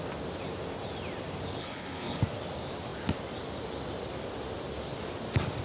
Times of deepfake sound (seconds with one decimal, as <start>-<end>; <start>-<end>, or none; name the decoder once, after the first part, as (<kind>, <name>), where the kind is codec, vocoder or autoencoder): 1.6-2.2 (codec, HILCodec)